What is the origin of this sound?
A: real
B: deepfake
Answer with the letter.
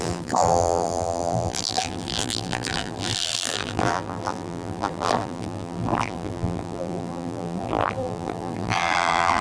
B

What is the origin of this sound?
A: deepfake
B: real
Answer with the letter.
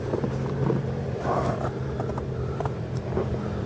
A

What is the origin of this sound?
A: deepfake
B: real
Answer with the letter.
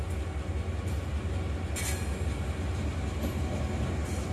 B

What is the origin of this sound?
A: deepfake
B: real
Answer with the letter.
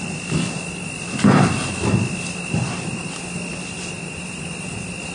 B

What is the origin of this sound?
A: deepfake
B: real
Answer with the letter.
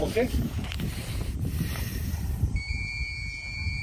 A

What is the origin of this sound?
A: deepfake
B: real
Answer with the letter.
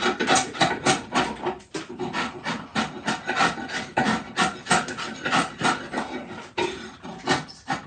B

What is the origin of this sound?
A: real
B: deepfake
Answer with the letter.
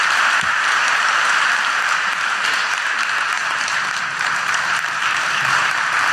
B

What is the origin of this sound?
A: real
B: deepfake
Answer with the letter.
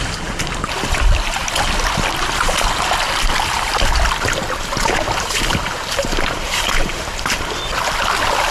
A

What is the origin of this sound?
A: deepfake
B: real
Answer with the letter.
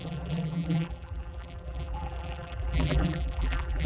A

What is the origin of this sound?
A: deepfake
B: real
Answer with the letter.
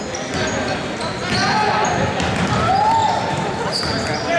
B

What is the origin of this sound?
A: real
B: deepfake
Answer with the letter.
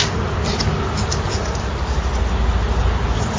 A